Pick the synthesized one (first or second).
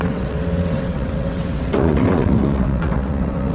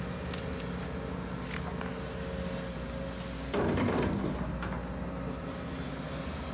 first